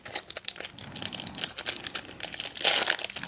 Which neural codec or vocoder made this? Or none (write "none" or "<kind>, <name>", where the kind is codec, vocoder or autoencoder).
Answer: none